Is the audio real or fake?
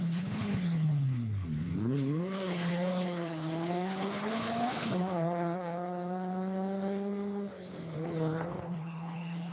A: fake